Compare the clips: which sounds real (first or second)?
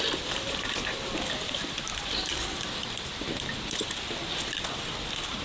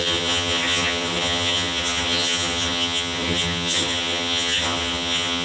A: first